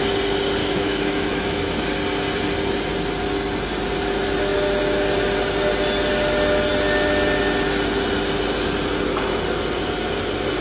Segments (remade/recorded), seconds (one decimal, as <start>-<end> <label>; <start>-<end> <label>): 0.0-0.6 recorded; 0.6-1.6 remade; 1.6-10.6 recorded